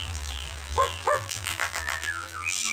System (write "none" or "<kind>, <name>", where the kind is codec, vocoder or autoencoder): vocoder, BigVGAN v2